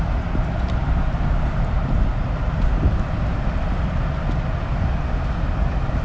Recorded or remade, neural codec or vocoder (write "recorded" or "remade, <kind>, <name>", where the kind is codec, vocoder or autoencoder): recorded